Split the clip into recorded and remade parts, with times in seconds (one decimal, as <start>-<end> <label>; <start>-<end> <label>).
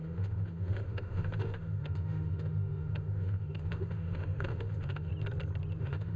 0.0-5.1 remade; 5.1-5.8 recorded; 5.8-6.2 remade